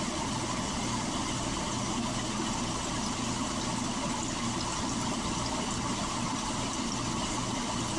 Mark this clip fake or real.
real